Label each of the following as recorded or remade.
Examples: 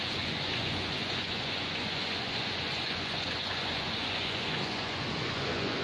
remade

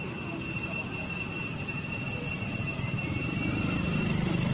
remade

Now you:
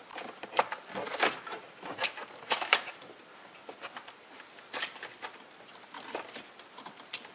recorded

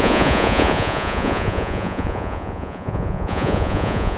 remade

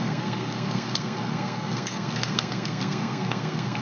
remade